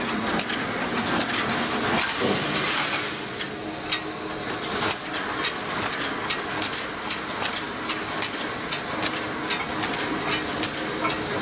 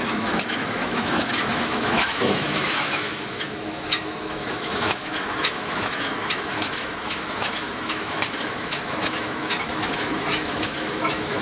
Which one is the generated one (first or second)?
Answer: second